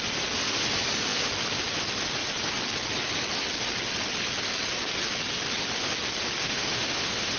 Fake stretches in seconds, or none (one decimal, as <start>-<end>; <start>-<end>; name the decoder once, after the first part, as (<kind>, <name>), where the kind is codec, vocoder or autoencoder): 6.4-7.4 (autoencoder, DAC-VAE)